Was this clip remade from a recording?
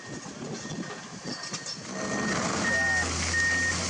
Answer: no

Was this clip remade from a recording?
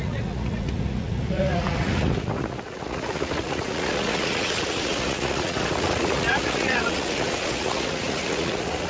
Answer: yes